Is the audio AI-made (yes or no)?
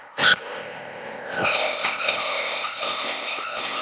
yes